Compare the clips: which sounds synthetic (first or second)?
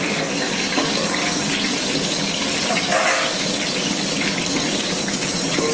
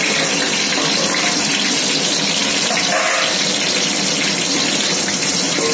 first